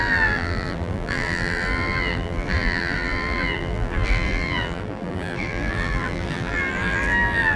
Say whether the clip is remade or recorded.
remade